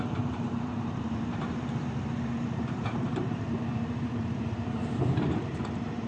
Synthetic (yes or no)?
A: yes